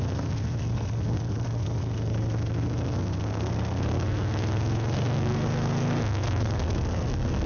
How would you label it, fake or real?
fake